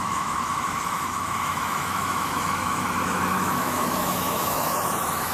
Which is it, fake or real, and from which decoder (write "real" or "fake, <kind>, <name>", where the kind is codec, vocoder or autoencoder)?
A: fake, autoencoder, DAC-VAE